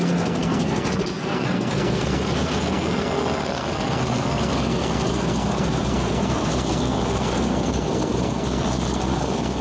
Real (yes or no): no